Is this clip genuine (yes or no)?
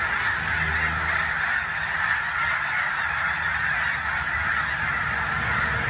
yes